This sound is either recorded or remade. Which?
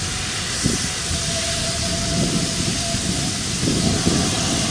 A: remade